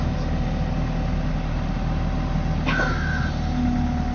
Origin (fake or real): real